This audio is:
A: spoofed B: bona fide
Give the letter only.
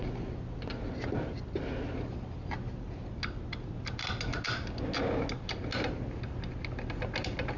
B